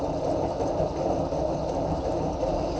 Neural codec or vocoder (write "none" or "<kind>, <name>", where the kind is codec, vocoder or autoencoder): vocoder, BigVGAN v2